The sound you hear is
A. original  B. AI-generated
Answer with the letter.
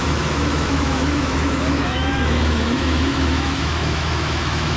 B